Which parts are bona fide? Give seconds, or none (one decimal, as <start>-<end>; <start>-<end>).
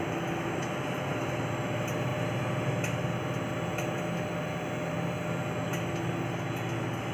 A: 0.0-7.1